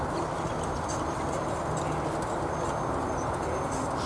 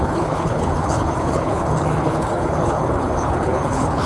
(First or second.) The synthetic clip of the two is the second